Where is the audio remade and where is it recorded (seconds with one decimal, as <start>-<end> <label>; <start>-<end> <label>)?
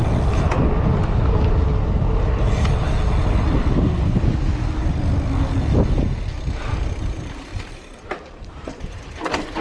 0.0-7.5 recorded; 7.5-9.0 remade; 9.0-9.6 recorded